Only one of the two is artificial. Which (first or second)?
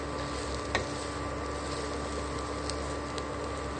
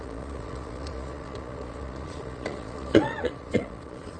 second